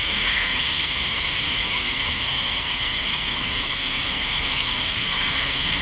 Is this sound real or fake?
fake